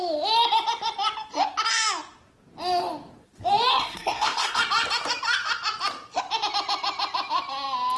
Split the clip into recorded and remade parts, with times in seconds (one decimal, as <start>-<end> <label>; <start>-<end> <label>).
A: 0.0-3.7 recorded; 3.7-4.6 remade; 4.6-8.0 recorded